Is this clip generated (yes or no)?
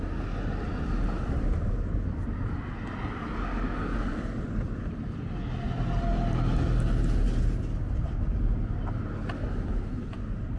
no